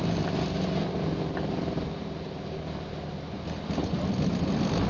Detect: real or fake real